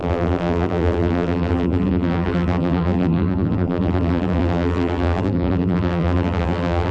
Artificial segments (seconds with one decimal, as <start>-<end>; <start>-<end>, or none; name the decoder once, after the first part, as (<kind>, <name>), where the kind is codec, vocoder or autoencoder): 0.0-6.9 (vocoder, BigVGAN v2)